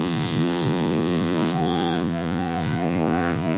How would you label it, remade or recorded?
remade